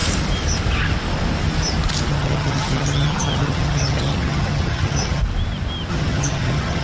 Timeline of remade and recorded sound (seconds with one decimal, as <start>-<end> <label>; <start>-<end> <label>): 0.0-2.1 recorded; 2.1-5.2 remade; 5.2-5.9 recorded; 5.9-6.8 remade